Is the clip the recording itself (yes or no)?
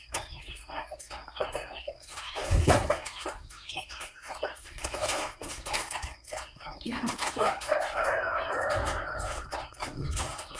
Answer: no